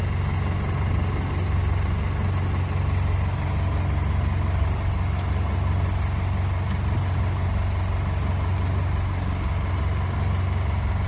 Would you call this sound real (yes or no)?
yes